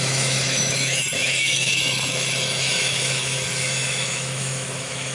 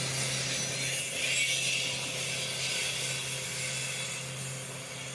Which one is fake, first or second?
first